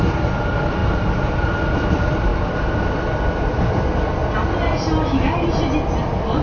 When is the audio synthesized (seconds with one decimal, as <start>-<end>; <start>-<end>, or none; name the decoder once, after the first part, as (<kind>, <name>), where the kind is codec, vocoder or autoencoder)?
none